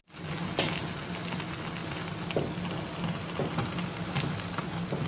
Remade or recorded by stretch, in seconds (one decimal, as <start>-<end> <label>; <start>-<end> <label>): 0.0-5.1 recorded

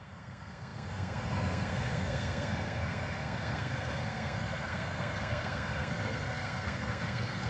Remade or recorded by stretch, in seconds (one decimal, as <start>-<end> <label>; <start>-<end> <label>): 0.0-7.5 remade

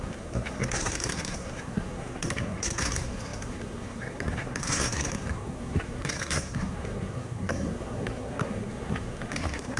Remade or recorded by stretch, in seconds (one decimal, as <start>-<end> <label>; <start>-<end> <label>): 0.0-9.8 remade